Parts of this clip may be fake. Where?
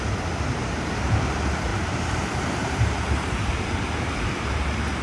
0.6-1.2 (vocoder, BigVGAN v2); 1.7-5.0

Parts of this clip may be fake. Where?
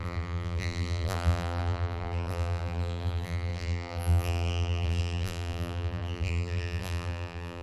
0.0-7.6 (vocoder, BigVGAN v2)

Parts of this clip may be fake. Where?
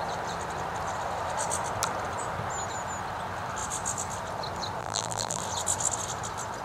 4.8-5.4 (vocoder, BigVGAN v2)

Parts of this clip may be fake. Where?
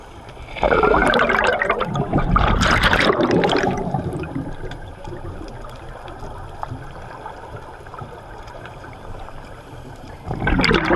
1.0-5.4 (vocoder, BigVGAN v2); 7.9-10.1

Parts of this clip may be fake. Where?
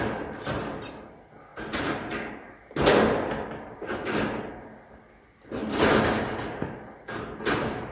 0.0-7.9 (vocoder, BigVGAN v2)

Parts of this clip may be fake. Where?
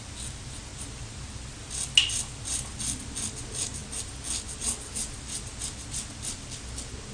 none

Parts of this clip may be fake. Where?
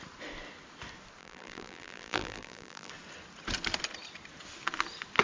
1.2-2.9 (vocoder, BigVGAN v2)